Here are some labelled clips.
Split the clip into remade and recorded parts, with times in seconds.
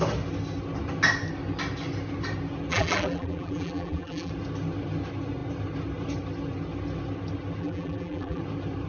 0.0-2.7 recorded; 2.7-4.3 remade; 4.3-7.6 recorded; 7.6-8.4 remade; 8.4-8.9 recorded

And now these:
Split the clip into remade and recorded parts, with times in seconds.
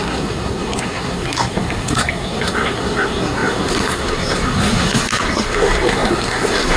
0.0-6.8 remade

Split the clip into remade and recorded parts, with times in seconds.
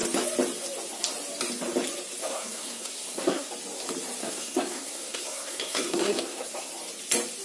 0.0-2.2 recorded; 2.2-3.5 remade; 3.5-4.2 recorded; 4.2-6.7 remade; 6.7-7.4 recorded